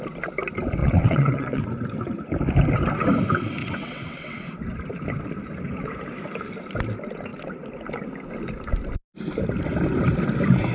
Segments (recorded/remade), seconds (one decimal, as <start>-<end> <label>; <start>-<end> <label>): 0.0-0.8 recorded; 0.8-1.6 remade; 1.6-3.6 recorded; 3.6-4.5 remade; 4.5-10.7 recorded